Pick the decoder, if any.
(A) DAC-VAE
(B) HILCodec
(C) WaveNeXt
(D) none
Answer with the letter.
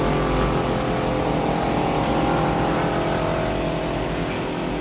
D